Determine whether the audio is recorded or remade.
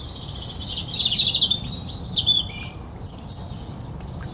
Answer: recorded